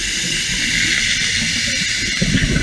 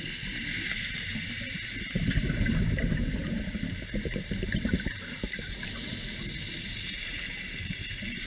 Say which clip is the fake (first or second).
second